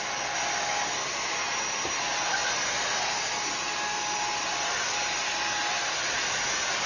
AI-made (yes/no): no